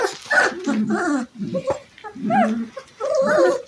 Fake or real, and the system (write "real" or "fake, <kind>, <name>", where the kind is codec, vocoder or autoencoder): real